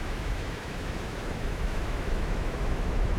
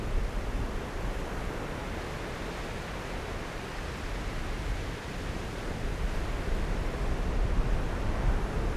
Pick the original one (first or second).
second